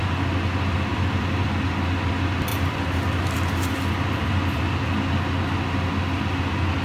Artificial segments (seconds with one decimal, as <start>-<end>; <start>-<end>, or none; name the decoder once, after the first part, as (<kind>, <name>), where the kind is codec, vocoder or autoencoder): 0.9-1.5 (vocoder, BigVGAN v2); 2.5-4.6